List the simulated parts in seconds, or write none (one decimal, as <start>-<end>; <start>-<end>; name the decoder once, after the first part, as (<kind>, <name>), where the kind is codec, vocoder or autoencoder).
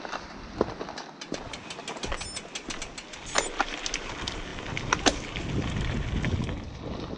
none